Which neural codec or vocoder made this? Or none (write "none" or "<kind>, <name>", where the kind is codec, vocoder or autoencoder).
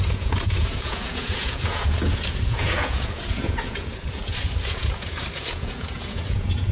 vocoder, Vocos